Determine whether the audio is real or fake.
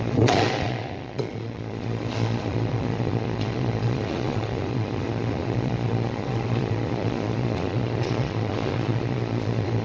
fake